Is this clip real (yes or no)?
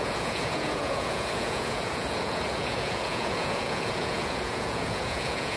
no